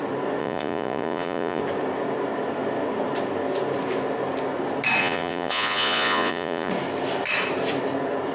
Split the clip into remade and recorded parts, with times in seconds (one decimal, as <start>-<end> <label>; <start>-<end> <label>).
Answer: 0.0-0.4 recorded; 0.4-1.6 remade; 1.6-5.0 recorded; 5.0-6.7 remade; 6.7-8.3 recorded